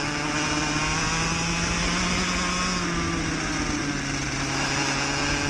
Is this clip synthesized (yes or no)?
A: no